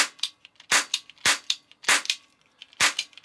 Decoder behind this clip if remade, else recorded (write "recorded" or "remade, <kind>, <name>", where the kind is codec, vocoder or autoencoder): recorded